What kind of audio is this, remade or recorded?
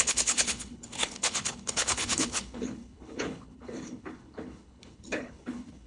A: remade